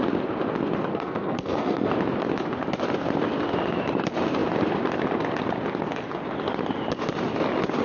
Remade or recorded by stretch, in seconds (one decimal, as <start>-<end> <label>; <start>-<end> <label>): 0.0-0.9 recorded; 0.9-1.9 remade; 1.9-7.8 recorded

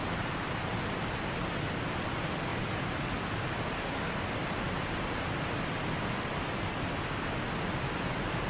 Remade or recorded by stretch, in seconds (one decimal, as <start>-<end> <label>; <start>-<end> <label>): 0.0-8.5 recorded

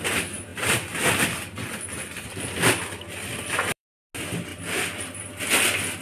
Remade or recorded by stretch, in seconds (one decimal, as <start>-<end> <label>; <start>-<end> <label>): 0.0-0.5 recorded; 0.5-4.1 remade; 4.1-4.5 recorded; 4.5-5.4 remade; 5.4-6.0 recorded